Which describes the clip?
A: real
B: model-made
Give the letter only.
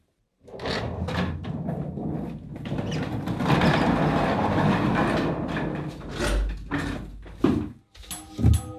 A